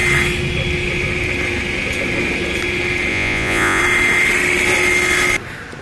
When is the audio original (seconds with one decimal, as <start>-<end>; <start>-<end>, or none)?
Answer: 0.0-3.1; 3.8-5.8